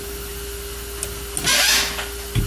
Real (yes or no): yes